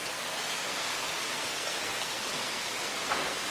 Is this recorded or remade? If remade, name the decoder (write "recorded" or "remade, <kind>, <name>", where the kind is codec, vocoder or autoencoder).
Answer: remade, codec, SNAC